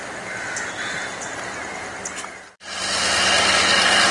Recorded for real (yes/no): yes